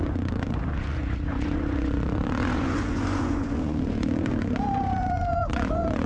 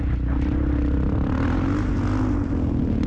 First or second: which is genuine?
second